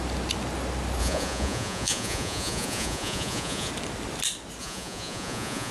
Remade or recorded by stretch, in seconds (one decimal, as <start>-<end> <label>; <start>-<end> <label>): 0.0-1.0 recorded; 1.0-3.7 remade; 3.7-4.6 recorded; 4.6-5.7 remade